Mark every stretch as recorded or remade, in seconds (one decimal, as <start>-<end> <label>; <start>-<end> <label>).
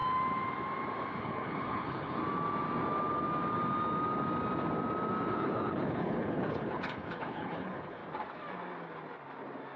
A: 0.0-1.2 recorded; 1.2-2.2 remade; 2.2-5.3 recorded; 5.3-8.0 remade; 8.0-9.8 recorded